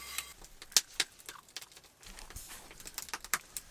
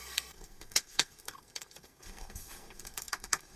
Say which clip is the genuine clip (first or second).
first